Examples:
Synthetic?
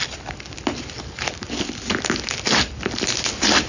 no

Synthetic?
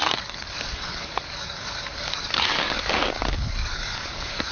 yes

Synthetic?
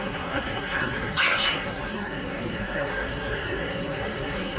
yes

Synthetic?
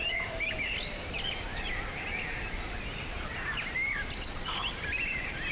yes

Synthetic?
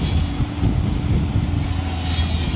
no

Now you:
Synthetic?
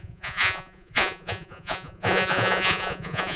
yes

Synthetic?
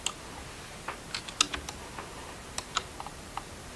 no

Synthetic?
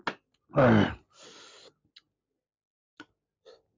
no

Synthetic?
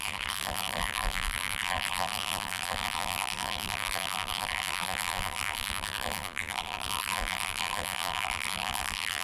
yes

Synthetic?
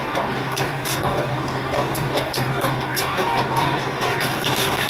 yes